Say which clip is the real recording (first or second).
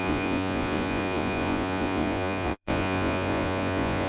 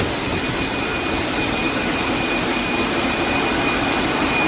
second